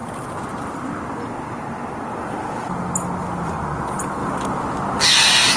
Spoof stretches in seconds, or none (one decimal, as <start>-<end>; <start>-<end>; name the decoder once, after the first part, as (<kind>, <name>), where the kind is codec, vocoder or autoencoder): none